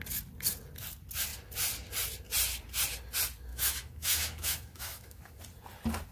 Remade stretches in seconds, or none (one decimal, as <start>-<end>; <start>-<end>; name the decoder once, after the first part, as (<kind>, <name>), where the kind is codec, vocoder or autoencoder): 3.5-5.4 (autoencoder, DAC-VAE)